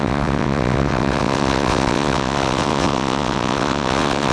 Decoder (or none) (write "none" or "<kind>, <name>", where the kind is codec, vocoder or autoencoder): vocoder, WaveNeXt